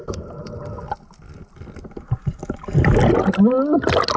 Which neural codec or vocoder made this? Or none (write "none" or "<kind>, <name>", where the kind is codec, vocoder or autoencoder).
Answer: none